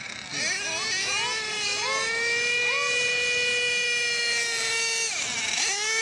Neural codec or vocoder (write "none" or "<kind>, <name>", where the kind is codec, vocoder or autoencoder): none